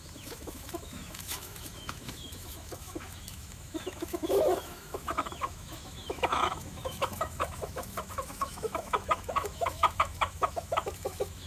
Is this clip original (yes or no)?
no